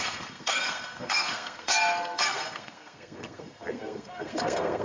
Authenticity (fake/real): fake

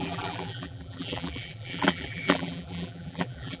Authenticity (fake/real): fake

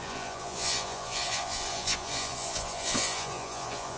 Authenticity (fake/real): fake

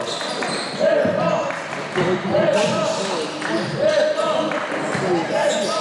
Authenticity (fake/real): real